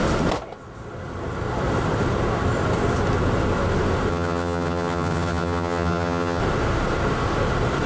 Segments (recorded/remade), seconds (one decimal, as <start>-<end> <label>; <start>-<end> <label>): 0.0-4.1 recorded; 4.1-6.4 remade; 6.4-7.9 recorded